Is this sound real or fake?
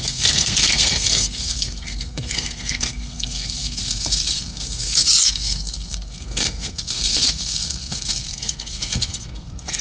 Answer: fake